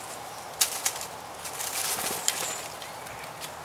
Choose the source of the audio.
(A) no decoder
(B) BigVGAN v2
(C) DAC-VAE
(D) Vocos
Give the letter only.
A